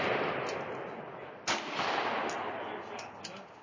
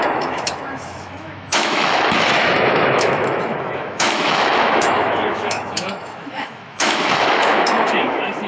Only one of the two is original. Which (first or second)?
first